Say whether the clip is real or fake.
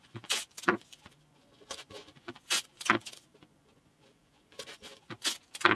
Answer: fake